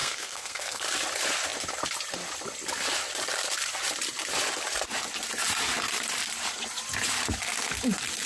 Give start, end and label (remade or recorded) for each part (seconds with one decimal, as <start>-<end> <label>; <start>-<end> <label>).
0.0-0.8 remade; 0.8-8.3 recorded